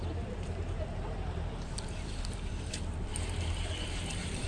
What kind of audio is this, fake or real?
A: fake